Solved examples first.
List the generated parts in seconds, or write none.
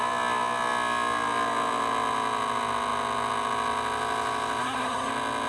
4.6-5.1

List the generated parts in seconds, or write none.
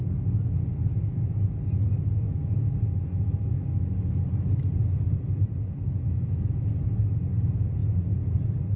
none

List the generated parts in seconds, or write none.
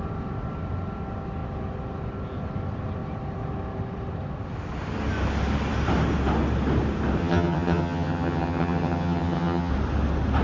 7.2-9.7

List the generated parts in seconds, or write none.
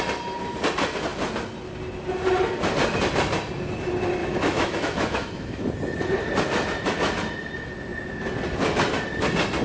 4.2-5.6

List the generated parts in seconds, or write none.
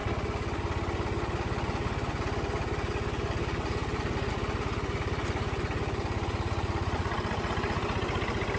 none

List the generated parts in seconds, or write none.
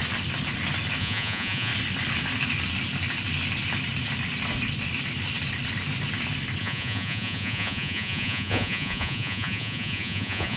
1.0-1.7; 6.6-10.6